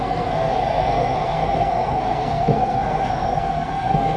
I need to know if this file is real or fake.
fake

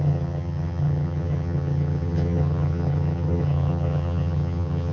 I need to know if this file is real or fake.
fake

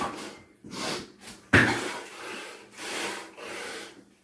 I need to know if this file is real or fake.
fake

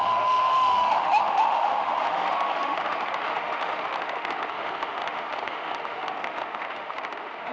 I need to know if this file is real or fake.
fake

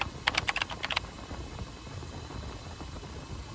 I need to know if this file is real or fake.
real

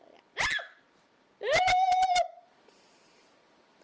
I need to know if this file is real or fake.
real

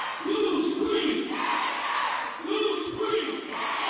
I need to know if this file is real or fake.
real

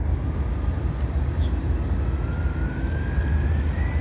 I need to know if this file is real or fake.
real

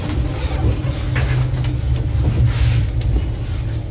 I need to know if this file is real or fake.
real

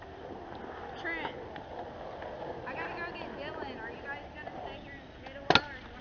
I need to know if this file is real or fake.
real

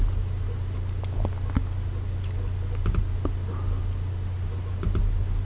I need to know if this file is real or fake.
real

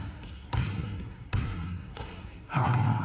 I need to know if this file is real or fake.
fake